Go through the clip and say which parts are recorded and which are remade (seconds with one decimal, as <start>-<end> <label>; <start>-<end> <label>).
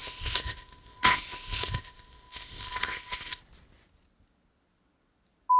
0.0-3.4 remade; 3.4-5.6 recorded